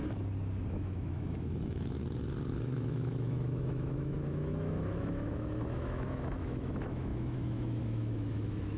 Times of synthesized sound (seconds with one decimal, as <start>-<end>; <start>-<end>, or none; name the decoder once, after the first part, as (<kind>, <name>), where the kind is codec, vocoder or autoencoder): 0.7-2.0 (autoencoder, DAC-VAE); 2.5-8.8